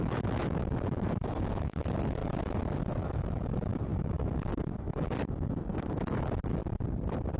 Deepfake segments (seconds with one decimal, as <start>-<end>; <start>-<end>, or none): 0.0-6.6